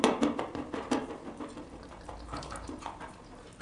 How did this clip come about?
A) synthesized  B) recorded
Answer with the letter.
B